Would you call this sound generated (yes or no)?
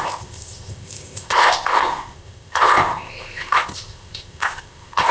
yes